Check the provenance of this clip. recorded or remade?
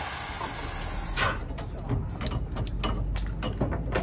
recorded